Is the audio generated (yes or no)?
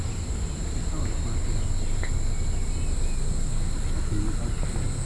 no